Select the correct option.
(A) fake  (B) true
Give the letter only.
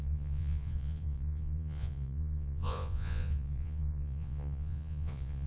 A